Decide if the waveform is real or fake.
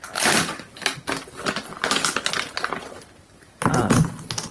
real